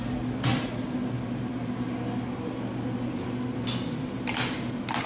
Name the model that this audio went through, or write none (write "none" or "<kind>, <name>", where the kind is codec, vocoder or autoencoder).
none